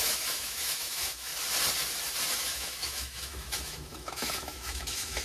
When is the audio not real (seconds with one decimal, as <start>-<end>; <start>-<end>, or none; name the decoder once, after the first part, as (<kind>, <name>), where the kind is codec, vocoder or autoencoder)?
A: 0.0-1.3 (autoencoder, DAC-VAE); 2.3-5.2